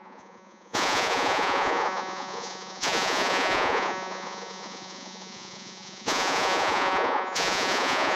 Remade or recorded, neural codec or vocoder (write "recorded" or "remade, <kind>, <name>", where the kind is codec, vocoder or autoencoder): remade, vocoder, Vocos